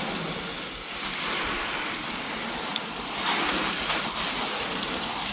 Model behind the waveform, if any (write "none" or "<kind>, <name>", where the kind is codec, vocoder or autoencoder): none